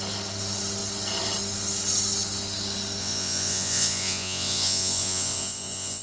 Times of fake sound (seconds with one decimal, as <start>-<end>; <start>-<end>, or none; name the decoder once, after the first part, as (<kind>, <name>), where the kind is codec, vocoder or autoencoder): 3.0-6.0 (vocoder, Vocos)